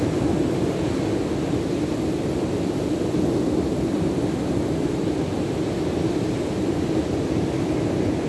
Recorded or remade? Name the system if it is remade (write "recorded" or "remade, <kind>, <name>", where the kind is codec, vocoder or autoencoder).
recorded